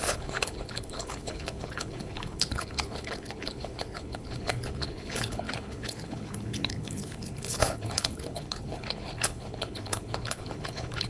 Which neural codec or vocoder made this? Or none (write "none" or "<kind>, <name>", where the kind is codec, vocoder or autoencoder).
codec, HILCodec